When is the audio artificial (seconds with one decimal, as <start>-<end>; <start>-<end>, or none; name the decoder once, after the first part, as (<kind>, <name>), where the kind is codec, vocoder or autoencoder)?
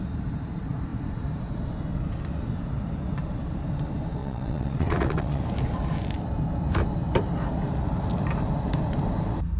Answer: 4.2-5.4 (vocoder, WaveNeXt)